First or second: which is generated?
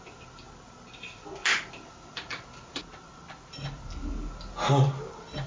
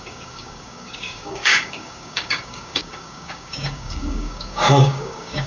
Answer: second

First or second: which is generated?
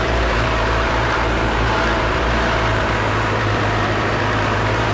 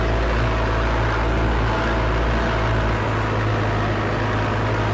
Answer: first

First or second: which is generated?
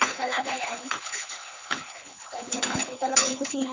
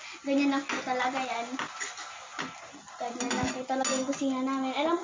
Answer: first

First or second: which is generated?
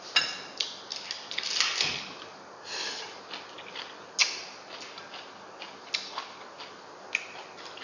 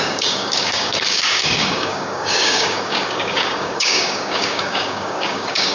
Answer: second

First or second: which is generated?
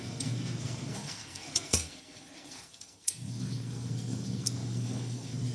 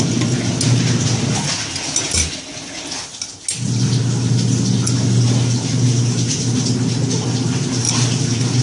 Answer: first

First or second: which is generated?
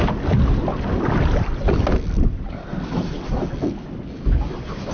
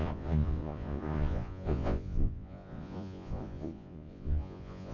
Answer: second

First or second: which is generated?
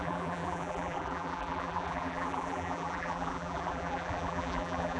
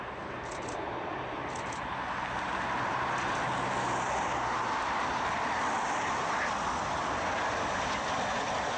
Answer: first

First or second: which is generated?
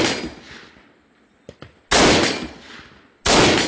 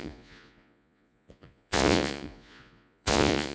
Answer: second